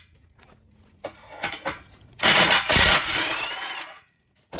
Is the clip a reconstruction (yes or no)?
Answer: yes